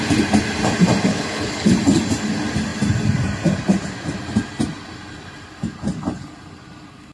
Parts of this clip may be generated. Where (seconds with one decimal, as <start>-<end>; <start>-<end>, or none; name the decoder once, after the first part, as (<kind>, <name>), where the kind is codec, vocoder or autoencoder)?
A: 1.1-1.7 (codec, HILCodec)